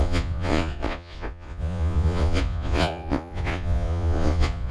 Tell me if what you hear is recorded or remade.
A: remade